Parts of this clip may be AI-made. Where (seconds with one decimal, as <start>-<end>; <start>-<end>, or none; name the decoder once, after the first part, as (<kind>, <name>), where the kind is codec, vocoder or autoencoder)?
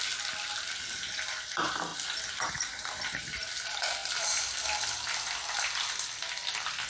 none